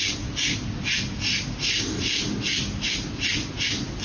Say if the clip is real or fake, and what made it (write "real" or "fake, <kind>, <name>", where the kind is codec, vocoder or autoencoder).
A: real